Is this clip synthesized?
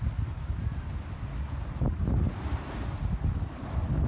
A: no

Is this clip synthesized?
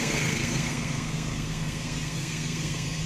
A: yes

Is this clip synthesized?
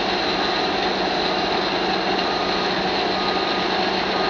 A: no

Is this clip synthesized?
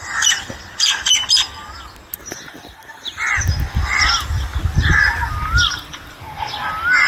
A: no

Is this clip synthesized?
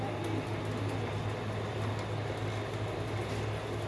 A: no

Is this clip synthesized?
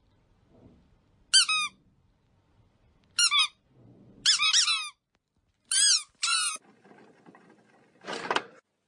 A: no